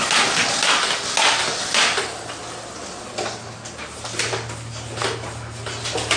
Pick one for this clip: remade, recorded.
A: recorded